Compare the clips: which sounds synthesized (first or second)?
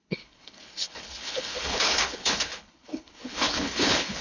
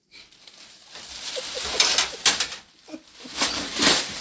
first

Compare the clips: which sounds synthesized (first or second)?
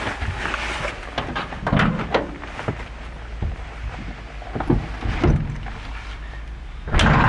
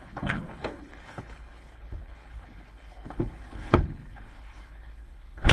second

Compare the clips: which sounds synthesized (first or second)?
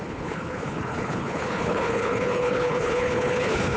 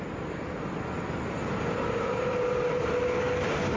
first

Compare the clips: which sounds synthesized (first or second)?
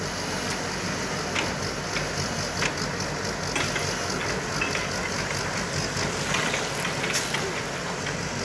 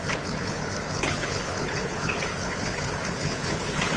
second